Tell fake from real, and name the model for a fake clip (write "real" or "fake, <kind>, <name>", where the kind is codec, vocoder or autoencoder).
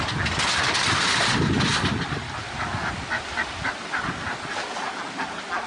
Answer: real